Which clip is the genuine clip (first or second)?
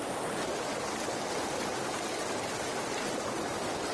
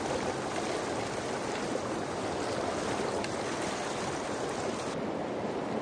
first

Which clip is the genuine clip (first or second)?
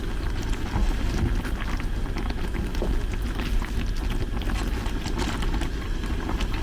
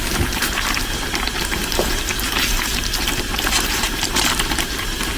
first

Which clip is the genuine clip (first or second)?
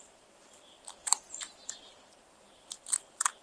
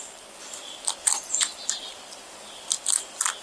second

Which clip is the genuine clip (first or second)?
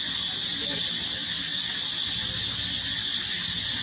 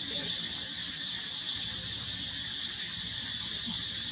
first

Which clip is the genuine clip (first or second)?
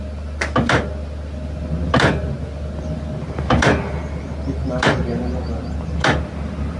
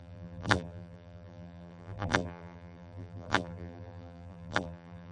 first